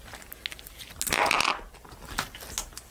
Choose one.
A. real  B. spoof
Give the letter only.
A